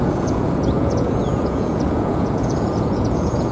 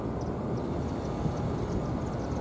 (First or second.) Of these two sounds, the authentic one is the second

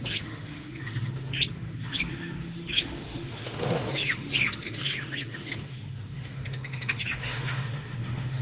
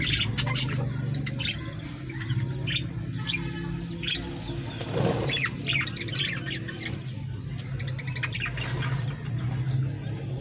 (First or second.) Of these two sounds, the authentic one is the second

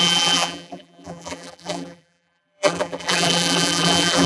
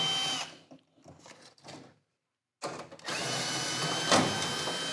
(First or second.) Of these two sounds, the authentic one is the second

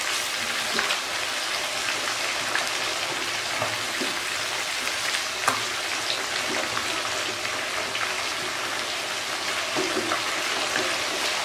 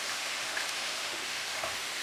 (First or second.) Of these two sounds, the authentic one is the first